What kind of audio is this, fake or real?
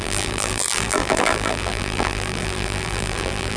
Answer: fake